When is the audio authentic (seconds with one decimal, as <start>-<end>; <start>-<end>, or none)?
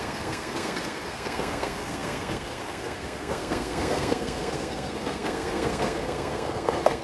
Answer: none